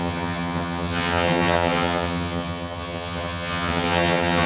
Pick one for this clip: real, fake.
fake